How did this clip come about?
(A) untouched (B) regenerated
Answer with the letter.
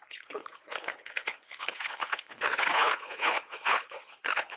B